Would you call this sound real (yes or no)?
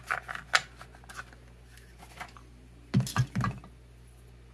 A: yes